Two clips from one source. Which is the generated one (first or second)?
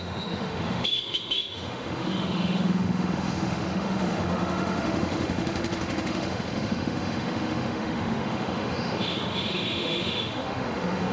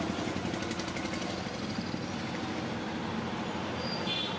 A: first